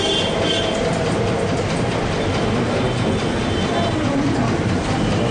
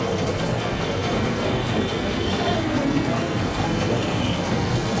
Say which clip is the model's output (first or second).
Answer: second